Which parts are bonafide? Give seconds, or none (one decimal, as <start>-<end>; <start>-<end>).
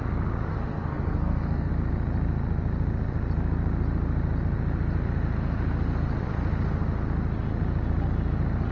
0.0-0.5; 1.7-8.7